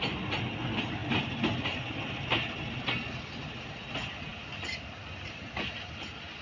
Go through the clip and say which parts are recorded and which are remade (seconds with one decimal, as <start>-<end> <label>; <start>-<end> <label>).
0.0-6.4 recorded